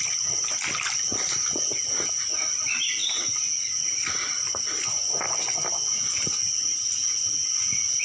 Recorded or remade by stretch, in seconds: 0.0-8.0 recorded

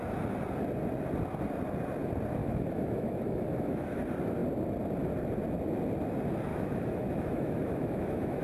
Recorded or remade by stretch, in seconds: 0.0-2.4 recorded; 2.4-4.0 remade; 4.0-6.5 recorded; 6.5-8.4 remade

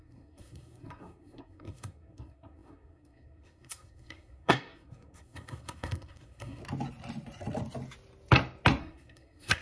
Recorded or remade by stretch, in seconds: 0.0-6.6 remade; 6.6-8.8 recorded; 8.8-9.6 remade

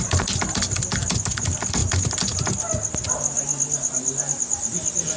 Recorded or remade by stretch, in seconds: 0.0-5.2 recorded

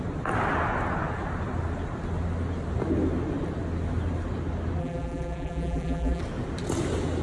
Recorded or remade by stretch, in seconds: 0.0-4.8 recorded; 4.8-6.2 remade; 6.2-7.2 recorded

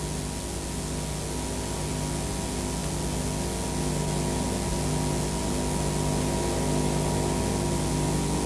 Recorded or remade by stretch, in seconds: 0.0-8.5 recorded

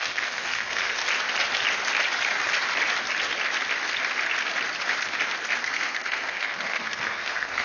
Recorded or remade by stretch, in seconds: 0.0-1.0 remade; 1.0-5.6 recorded; 5.6-7.6 remade